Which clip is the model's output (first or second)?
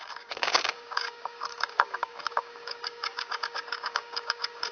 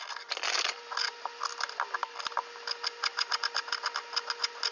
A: first